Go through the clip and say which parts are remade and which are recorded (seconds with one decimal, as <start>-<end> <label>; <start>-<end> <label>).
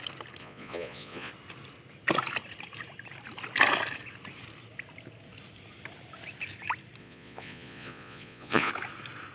0.0-0.4 recorded; 0.4-1.3 remade; 1.3-7.0 recorded; 7.0-8.7 remade; 8.7-9.3 recorded